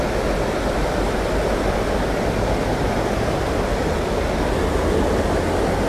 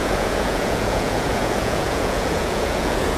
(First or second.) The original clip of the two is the first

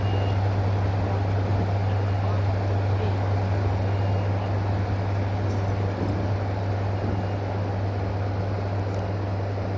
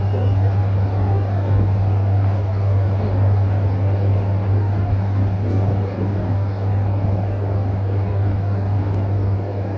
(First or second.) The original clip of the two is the first